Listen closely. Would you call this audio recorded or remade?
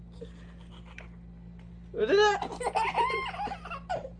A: recorded